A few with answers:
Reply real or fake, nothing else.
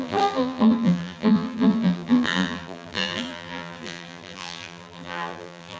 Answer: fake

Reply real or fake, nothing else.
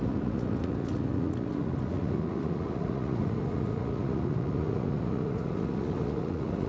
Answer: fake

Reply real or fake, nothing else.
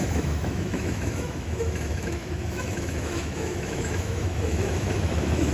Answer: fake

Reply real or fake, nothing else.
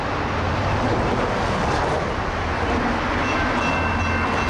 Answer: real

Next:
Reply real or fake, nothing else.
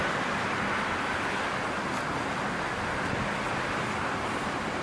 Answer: real